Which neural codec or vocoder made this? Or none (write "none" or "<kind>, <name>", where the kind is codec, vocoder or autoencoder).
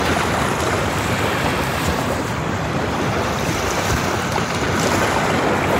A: vocoder, BigVGAN v2